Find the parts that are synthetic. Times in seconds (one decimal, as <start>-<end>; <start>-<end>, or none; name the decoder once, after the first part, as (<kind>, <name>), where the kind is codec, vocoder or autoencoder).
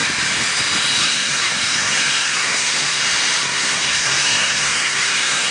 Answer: 1.0-3.0 (codec, SNAC); 3.4-5.5